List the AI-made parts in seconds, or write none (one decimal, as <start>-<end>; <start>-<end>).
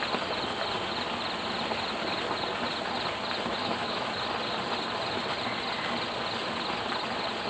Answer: 3.6-4.1